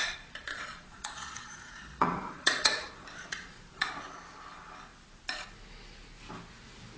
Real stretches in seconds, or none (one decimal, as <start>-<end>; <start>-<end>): 0.0-0.5; 4.0-7.0